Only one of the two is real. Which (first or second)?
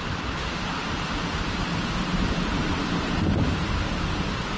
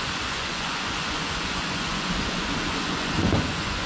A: first